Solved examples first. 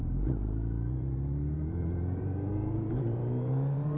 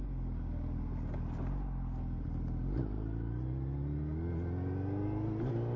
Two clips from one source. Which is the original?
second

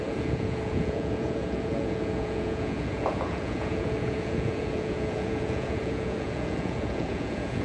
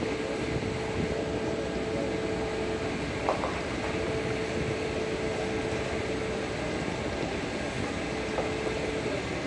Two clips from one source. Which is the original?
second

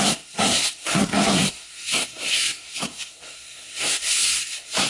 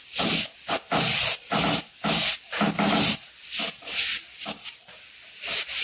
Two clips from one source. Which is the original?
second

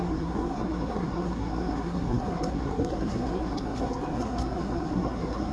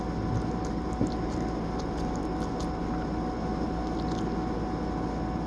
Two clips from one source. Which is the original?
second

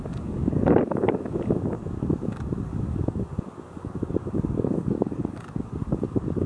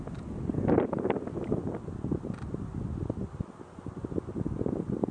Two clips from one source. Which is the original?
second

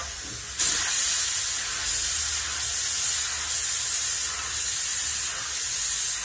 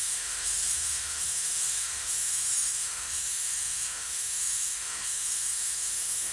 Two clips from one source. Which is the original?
first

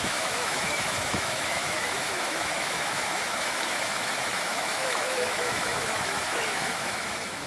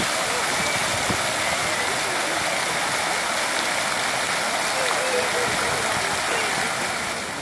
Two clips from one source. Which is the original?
second